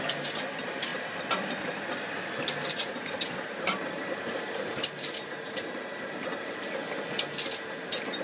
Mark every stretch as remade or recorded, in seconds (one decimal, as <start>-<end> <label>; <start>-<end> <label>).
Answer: 0.0-8.2 recorded